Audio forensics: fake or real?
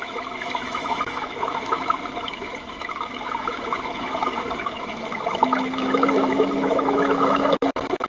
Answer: fake